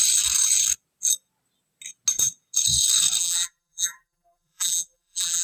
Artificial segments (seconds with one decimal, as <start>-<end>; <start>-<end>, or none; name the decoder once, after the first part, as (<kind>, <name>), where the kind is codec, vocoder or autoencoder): 3.2-5.4 (vocoder, BigVGAN v2)